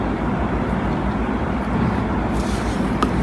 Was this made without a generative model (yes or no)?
yes